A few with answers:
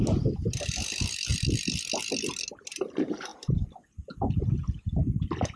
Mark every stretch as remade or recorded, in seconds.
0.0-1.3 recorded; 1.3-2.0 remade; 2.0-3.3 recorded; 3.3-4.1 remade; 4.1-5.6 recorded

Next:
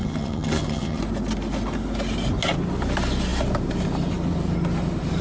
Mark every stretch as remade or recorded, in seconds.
0.0-1.0 remade; 1.0-5.2 recorded